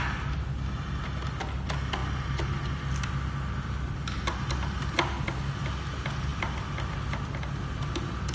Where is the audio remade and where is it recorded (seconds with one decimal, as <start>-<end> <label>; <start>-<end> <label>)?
0.0-8.3 recorded